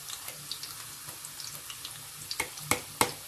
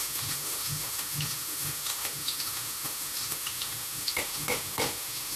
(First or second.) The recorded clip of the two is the first